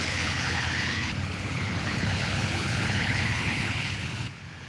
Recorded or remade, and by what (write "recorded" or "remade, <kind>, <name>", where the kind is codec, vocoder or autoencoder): remade, codec, HILCodec